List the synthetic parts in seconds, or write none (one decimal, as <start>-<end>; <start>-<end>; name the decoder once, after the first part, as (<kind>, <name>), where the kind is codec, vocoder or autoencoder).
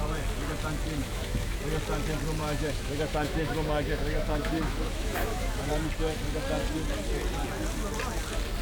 1.0-1.6 (autoencoder, DAC-VAE); 2.4-5.7